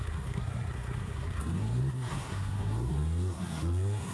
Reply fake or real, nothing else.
fake